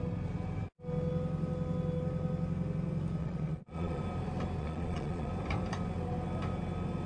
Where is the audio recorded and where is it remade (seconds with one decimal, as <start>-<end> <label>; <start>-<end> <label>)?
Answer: 0.0-3.2 recorded; 3.2-4.0 remade; 4.0-4.6 recorded; 4.6-5.3 remade; 5.3-7.1 recorded

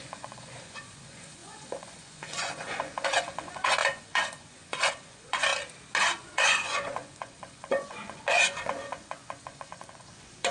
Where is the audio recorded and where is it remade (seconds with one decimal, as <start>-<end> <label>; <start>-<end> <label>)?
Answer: 0.0-5.5 remade; 5.5-6.2 recorded; 6.2-10.5 remade

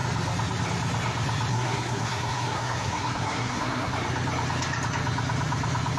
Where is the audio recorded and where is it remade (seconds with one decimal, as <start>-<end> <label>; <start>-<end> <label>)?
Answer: 0.0-1.5 recorded; 1.5-3.9 remade; 3.9-6.0 recorded

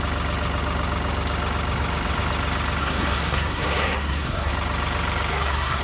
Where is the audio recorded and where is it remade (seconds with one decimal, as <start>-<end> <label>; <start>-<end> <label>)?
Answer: 0.0-2.8 recorded; 2.8-4.5 remade; 4.5-5.3 recorded; 5.3-5.8 remade

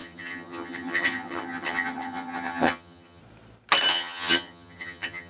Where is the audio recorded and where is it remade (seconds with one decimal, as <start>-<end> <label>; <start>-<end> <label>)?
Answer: 0.0-3.2 remade; 3.2-3.9 recorded; 3.9-5.3 remade

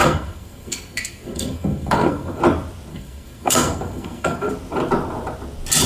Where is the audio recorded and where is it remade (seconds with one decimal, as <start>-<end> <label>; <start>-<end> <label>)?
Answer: 0.0-2.4 remade; 2.4-2.9 recorded; 2.9-4.5 remade; 4.5-5.9 recorded

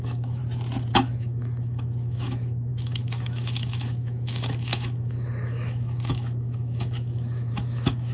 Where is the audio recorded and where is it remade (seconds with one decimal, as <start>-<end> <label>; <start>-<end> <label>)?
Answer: 0.0-0.4 remade; 0.4-0.9 recorded; 0.9-8.1 remade